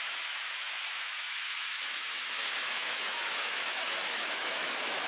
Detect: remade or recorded remade